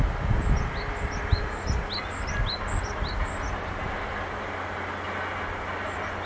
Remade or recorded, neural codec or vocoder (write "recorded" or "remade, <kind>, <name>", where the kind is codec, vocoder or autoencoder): recorded